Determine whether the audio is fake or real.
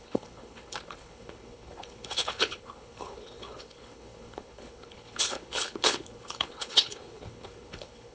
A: fake